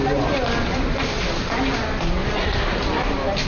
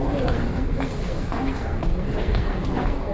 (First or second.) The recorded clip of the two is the first